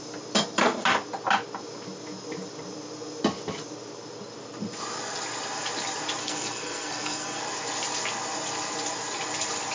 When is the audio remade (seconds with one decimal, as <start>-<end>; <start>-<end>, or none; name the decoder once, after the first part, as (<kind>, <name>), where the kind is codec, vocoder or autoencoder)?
6.2-7.4 (codec, SNAC)